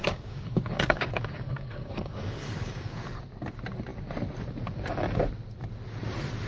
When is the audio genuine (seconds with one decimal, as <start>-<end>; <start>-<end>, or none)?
3.2-6.5